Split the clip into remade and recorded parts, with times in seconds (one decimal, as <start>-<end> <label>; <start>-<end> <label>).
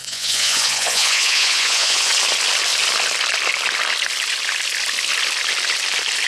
0.0-2.1 remade; 2.1-6.3 recorded